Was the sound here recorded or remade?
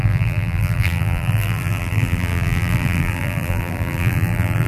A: remade